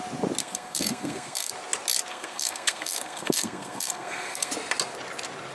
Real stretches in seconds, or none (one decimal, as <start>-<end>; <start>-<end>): 0.0-0.4; 1.5-2.1; 4.5-5.5